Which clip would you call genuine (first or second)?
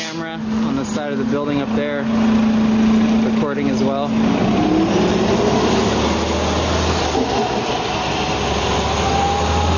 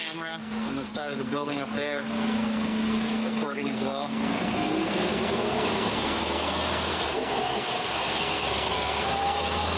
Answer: first